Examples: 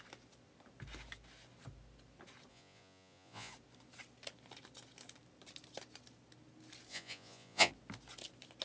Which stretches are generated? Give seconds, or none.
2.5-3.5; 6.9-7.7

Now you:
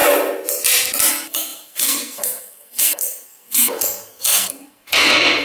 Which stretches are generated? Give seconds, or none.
1.1-5.4

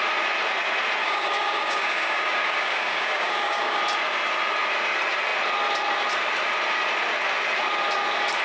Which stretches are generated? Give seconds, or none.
1.0-3.8

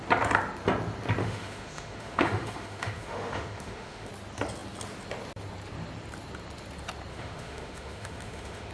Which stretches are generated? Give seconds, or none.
1.2-4.1; 7.1-8.7